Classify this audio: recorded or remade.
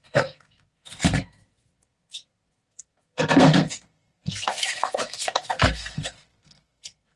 remade